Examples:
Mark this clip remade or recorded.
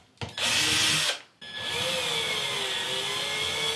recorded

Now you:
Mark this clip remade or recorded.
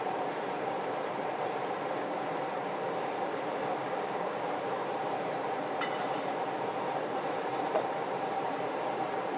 remade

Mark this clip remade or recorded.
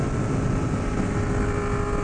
recorded